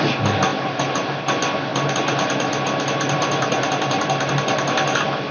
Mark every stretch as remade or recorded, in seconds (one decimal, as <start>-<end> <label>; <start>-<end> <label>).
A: 0.0-0.5 recorded; 0.5-1.2 remade; 1.2-5.3 recorded